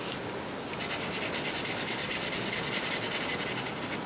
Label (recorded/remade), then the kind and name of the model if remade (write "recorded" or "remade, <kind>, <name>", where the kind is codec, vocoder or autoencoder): recorded